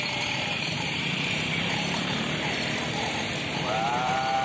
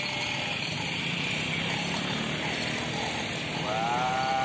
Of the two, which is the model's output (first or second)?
first